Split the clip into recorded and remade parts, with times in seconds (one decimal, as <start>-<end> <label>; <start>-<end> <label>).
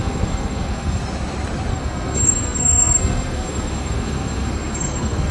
0.0-1.0 remade; 1.0-1.7 recorded; 1.7-5.3 remade